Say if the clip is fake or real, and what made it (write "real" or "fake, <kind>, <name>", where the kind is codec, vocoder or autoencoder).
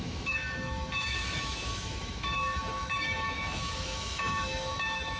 fake, autoencoder, DAC-VAE